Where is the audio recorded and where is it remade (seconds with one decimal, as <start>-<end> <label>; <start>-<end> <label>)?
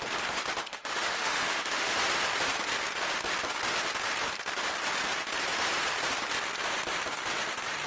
0.0-0.7 recorded; 0.7-1.9 remade; 1.9-7.9 recorded